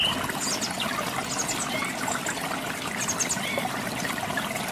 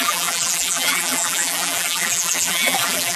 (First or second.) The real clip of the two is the first